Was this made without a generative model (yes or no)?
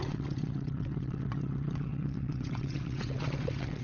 no